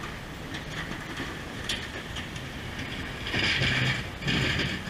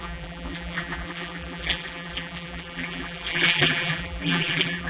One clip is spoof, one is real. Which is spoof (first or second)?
second